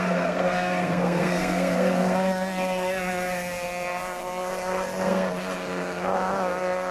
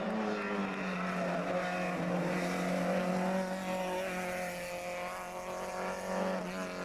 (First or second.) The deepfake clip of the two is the first